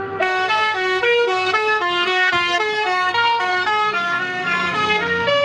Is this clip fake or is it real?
fake